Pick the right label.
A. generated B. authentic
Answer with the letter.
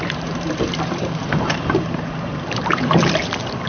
A